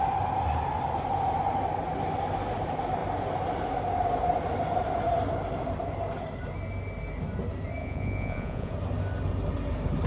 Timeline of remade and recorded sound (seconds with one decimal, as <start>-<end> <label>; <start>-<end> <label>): 0.0-7.8 recorded; 7.8-8.7 remade; 8.7-10.1 recorded